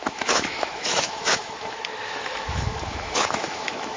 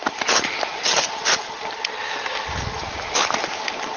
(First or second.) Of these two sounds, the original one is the second